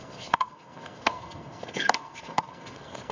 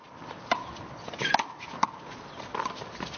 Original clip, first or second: second